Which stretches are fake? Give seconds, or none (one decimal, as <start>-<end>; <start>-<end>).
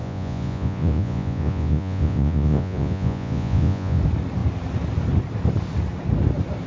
0.0-4.0